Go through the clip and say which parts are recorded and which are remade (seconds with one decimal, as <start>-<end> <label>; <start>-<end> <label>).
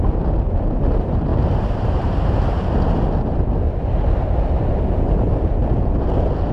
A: 0.0-1.3 recorded; 1.3-2.5 remade; 2.5-6.5 recorded